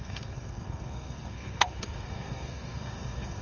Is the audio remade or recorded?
remade